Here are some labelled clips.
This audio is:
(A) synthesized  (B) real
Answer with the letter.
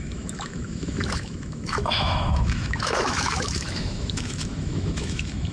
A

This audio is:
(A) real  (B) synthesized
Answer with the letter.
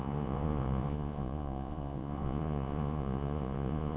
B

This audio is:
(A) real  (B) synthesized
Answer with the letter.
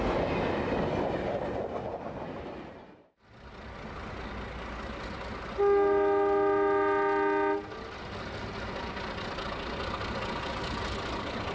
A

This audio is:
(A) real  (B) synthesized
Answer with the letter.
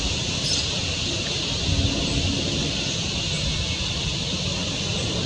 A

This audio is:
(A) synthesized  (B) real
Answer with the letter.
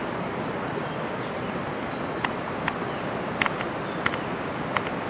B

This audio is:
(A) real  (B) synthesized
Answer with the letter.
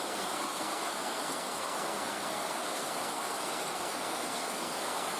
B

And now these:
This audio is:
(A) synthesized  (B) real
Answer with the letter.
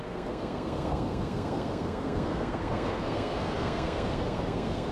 A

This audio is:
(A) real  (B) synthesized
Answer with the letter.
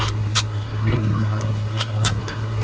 B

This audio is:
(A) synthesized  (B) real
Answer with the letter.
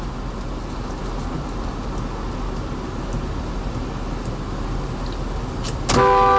B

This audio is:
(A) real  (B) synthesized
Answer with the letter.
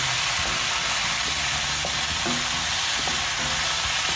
A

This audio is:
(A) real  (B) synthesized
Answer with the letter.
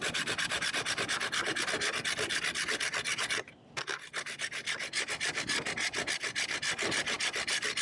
A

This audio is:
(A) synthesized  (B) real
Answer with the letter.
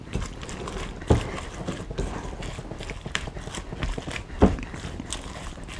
B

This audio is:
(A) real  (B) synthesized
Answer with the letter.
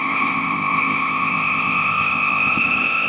B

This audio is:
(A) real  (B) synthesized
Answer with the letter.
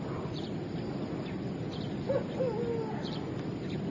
A